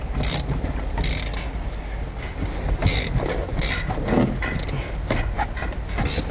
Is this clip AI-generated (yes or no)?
no